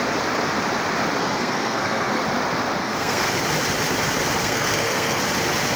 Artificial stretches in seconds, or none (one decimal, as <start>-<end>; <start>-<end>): 1.2-2.2; 2.8-3.4; 4.4-5.2